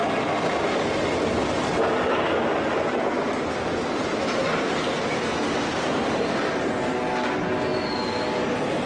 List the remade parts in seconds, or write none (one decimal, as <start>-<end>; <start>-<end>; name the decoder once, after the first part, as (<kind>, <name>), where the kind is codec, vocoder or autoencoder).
none

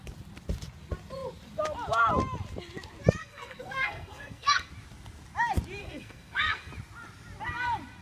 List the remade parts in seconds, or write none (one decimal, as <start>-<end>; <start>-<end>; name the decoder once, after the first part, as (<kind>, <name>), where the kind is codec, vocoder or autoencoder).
3.2-4.7 (codec, SNAC); 5.8-6.7

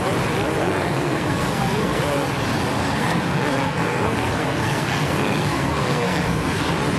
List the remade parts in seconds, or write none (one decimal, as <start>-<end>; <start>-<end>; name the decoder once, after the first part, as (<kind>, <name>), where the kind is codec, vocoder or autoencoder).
0.6-2.0 (codec, SNAC); 2.7-6.6